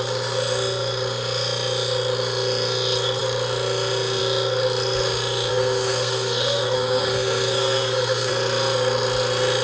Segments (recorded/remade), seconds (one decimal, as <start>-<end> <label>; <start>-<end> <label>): 0.0-5.5 recorded; 5.5-8.3 remade; 8.3-9.6 recorded